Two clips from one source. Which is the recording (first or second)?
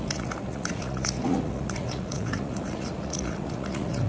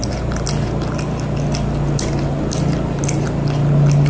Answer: second